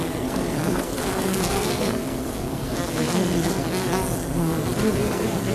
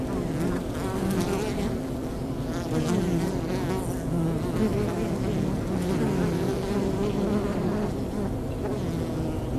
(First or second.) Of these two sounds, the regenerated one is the first